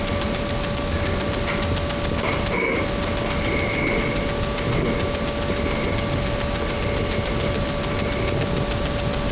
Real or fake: real